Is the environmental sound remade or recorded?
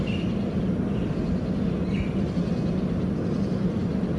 recorded